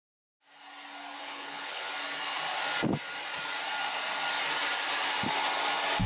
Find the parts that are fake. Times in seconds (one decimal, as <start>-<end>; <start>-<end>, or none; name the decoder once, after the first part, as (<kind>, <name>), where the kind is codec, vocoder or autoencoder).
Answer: 1.2-1.9 (codec, HILCodec)